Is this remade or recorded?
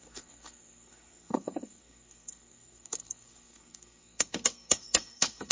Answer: remade